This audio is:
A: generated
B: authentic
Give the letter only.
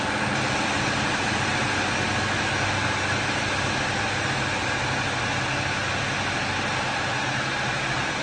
B